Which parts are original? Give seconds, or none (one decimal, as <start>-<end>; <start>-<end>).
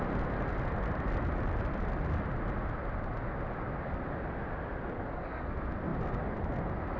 0.0-7.0